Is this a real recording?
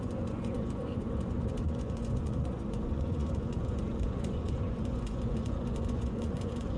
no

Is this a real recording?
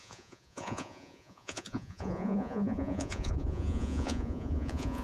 no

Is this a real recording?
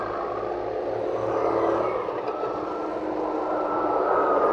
yes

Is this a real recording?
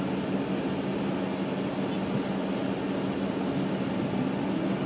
yes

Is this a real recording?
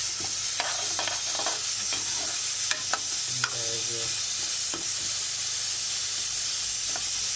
yes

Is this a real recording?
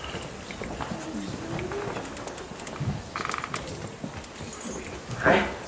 yes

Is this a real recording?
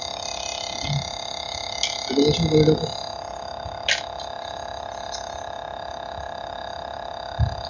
yes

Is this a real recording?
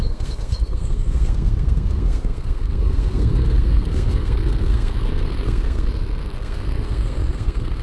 no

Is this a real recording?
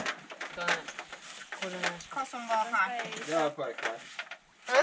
yes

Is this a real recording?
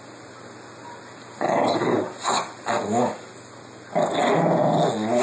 yes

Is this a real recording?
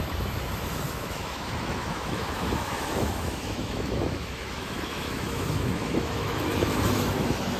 no